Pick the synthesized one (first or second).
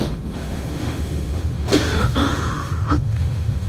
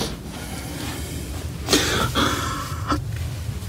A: first